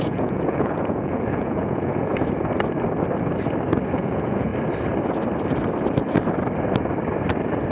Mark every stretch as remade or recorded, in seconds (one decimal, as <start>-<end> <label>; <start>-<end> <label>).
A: 0.0-2.1 remade; 2.1-3.9 recorded; 3.9-4.5 remade; 4.5-7.7 recorded

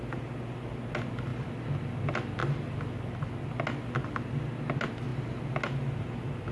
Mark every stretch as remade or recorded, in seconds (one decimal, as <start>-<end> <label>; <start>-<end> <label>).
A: 0.0-6.5 recorded

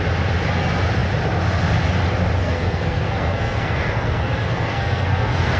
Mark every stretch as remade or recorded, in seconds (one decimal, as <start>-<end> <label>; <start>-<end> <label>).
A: 0.0-2.4 recorded; 2.4-5.6 remade

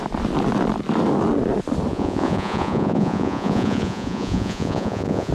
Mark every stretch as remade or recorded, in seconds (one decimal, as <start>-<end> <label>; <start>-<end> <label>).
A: 0.0-1.9 recorded; 1.9-5.3 remade

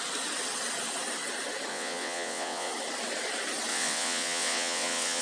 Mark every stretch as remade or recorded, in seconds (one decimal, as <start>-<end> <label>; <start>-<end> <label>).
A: 0.0-1.7 recorded; 1.7-2.7 remade; 2.7-3.7 recorded; 3.7-5.2 remade